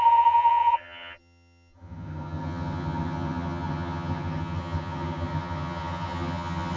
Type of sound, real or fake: fake